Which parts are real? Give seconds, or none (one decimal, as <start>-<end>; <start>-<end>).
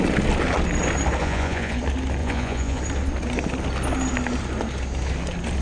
0.0-1.2; 1.8-2.2; 2.8-5.6